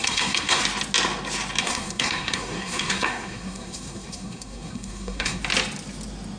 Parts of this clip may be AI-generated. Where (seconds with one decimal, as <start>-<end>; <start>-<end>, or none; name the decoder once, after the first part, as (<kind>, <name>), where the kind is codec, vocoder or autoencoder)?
0.0-0.6 (codec, SNAC); 1.6-5.4